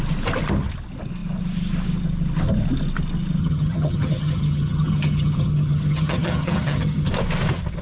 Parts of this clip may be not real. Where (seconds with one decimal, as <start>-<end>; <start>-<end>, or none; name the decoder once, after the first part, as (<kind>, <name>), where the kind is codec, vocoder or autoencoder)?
3.4-7.1 (vocoder, HiFi-GAN)